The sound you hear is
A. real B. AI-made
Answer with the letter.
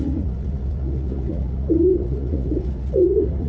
B